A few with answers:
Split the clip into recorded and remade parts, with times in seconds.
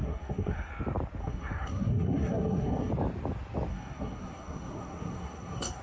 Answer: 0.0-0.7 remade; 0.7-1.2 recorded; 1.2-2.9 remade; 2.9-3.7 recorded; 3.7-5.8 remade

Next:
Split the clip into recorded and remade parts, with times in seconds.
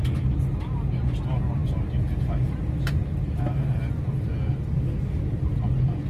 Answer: 0.0-6.1 recorded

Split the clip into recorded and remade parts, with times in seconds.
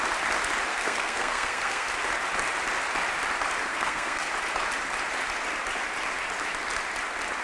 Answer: 0.0-0.7 recorded; 0.7-1.9 remade; 1.9-3.7 recorded; 3.7-4.3 remade; 4.3-7.4 recorded